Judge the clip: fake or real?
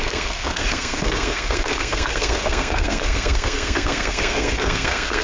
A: fake